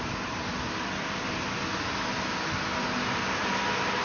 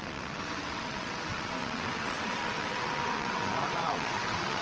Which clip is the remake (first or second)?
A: second